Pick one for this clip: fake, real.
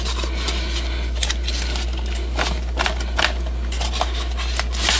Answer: real